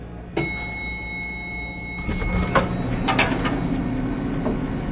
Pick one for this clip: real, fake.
real